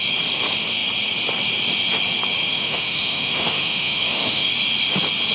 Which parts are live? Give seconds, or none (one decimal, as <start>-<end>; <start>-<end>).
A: 0.0-2.5; 4.5-5.3